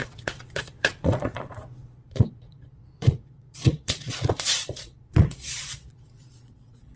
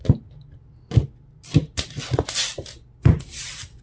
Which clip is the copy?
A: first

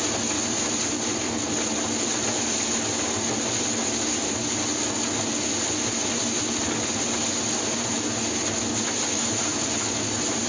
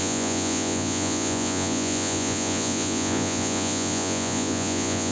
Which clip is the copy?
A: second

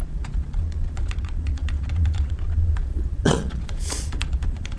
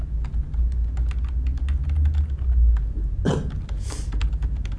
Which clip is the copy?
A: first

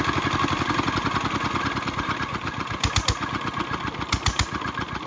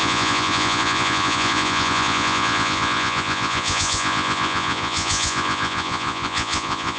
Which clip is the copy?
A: second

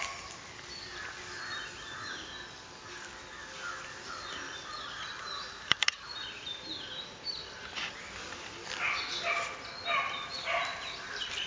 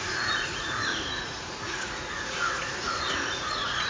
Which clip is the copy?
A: second